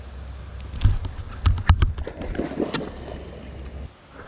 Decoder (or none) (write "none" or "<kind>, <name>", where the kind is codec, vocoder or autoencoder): none